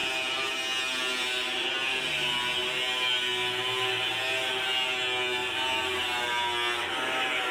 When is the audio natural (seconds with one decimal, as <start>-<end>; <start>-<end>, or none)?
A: 0.0-7.5